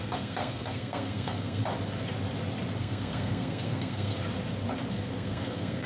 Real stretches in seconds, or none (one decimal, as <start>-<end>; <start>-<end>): 1.6-2.8; 4.1-4.9